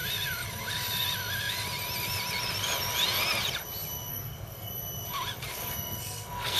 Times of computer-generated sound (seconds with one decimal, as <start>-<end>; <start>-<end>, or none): 4.1-4.7; 5.6-6.6